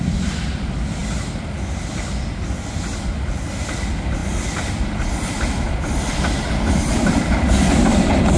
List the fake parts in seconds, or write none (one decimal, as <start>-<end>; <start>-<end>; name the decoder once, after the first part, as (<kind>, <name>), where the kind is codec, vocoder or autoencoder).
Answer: 0.0-1.0 (vocoder, BigVGAN v2); 3.5-8.4